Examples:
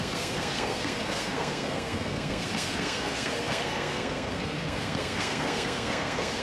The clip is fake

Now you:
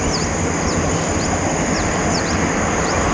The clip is real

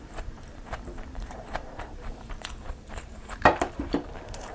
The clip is fake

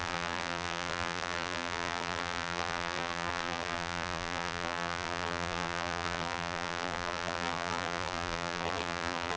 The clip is fake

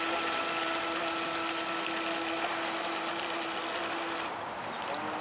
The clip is real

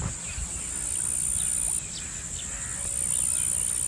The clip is real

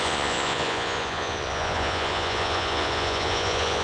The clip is fake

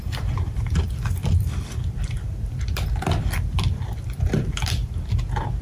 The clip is fake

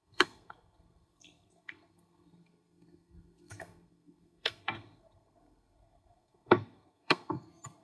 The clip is fake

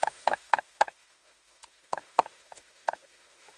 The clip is fake